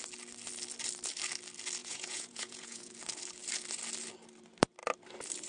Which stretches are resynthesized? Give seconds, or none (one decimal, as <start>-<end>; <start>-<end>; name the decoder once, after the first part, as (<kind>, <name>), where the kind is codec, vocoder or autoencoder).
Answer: 1.8-2.9 (vocoder, Vocos)